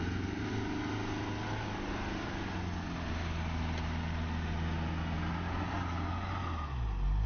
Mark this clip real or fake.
real